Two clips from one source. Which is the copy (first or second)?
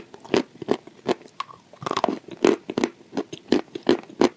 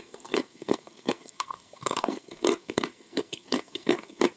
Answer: second